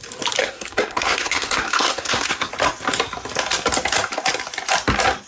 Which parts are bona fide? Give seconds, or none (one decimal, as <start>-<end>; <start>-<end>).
0.0-0.4; 2.5-5.3